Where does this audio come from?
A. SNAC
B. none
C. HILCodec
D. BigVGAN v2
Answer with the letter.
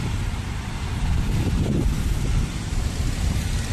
B